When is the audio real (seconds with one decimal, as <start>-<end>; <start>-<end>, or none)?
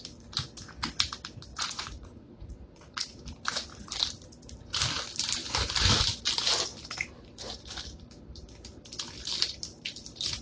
0.0-1.5; 3.2-10.4